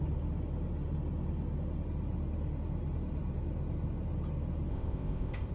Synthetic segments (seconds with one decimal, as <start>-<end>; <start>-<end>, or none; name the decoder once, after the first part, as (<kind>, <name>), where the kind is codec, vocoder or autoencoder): 4.7-5.5 (codec, ZipCodec)